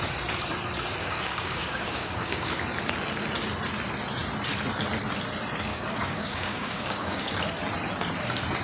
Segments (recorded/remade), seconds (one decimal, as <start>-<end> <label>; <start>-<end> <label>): 0.0-1.0 recorded; 1.0-2.5 remade; 2.5-5.7 recorded; 5.7-7.3 remade; 7.3-8.6 recorded